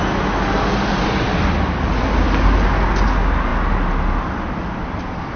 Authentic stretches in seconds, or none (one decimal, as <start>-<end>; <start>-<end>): 0.0-5.4